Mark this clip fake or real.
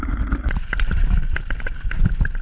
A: real